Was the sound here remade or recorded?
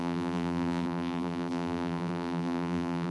remade